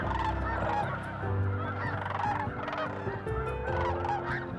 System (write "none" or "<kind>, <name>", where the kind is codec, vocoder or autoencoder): none